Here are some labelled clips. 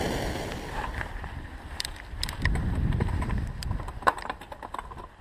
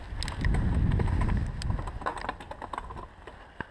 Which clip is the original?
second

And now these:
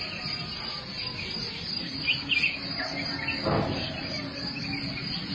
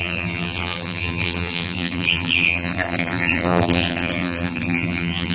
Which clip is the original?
first